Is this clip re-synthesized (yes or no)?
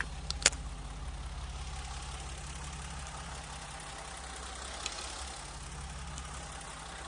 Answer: no